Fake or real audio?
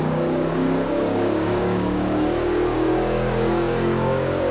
fake